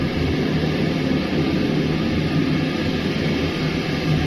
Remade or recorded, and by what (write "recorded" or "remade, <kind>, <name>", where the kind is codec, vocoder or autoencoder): recorded